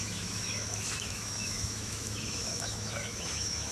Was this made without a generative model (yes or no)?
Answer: no